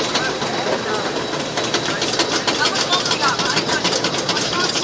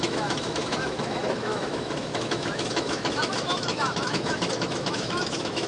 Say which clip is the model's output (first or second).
second